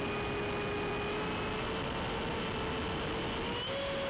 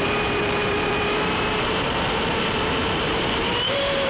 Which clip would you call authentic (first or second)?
first